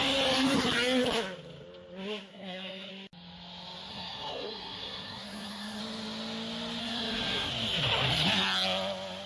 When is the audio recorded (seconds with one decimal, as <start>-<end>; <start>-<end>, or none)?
0.0-2.3; 2.9-3.9; 5.8-6.8; 7.5-9.3